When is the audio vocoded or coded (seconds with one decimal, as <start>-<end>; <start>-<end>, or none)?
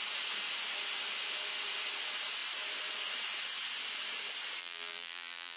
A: 4.6-5.6